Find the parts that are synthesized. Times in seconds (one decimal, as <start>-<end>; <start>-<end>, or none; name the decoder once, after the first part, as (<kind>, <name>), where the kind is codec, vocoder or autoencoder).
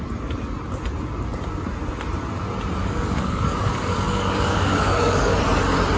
2.8-5.4 (codec, DAC)